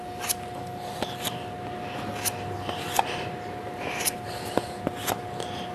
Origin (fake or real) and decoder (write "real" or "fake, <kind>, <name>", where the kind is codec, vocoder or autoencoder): real